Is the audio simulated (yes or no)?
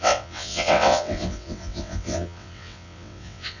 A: yes